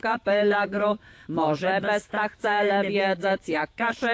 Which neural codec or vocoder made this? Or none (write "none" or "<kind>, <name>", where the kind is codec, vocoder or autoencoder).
autoencoder, DAC-VAE